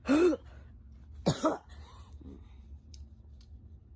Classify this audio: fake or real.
real